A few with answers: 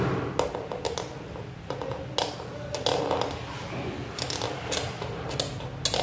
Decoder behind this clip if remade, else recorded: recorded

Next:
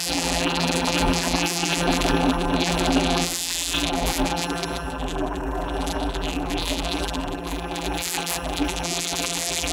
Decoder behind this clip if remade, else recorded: remade, vocoder, BigVGAN v2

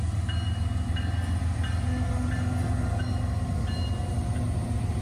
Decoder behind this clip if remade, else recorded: recorded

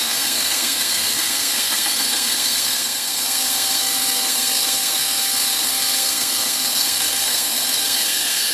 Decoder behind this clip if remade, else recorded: remade, codec, SNAC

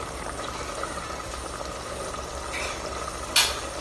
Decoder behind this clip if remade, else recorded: recorded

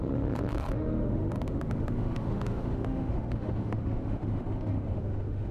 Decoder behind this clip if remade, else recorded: remade, autoencoder, DAC-VAE